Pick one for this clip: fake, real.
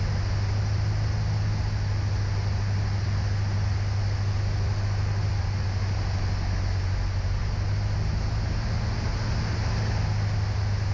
real